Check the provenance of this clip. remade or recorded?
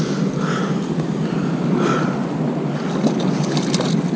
recorded